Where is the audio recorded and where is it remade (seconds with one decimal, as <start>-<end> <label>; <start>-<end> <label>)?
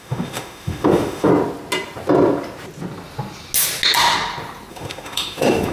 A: 0.0-1.3 remade; 1.3-4.7 recorded; 4.7-5.7 remade